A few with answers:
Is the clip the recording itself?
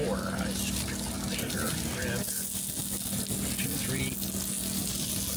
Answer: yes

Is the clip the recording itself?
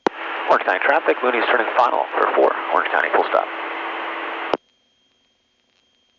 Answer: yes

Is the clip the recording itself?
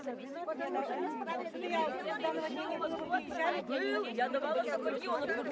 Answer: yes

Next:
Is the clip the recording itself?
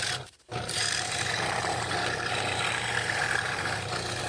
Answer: no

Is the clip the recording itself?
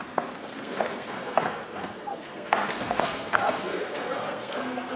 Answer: no